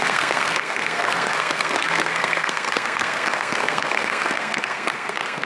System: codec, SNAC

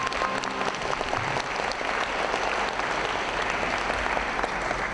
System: none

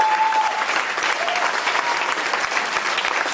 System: none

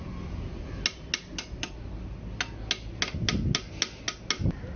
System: none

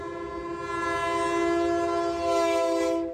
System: none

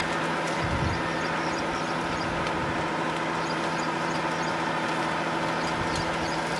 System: none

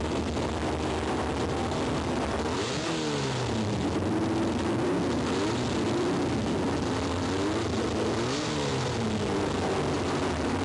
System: none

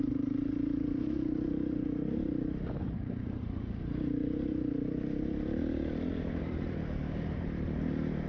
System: vocoder, BigVGAN v2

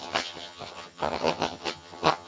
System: vocoder, HiFi-GAN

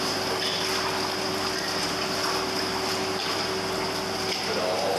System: none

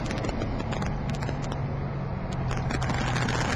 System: none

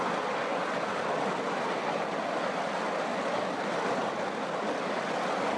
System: none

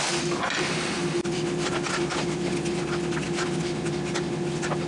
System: none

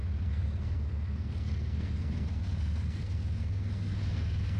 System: codec, SNAC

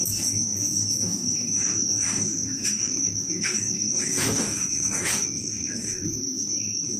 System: codec, DAC